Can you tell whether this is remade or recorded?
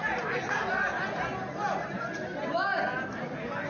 recorded